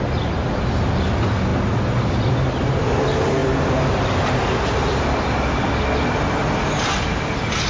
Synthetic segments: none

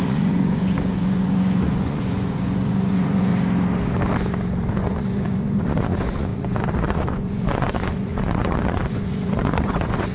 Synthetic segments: 0.0-3.3; 4.7-10.1

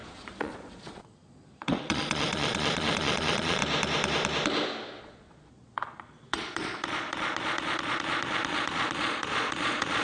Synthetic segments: 0.0-3.6; 5.0-10.0

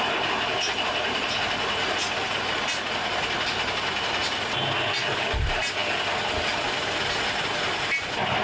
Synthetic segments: none